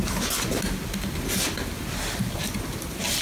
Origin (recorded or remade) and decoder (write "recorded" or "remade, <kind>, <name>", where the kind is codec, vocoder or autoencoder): recorded